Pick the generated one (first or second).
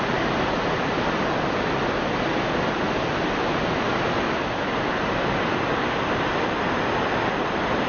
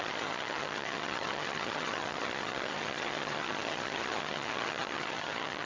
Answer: second